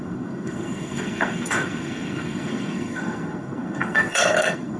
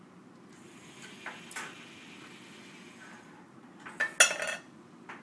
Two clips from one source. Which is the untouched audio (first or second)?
second